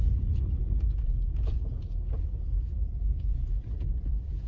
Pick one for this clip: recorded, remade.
remade